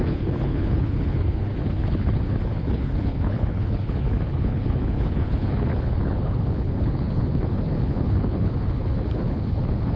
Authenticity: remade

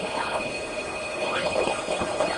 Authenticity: remade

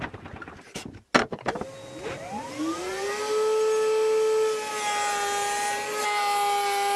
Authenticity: recorded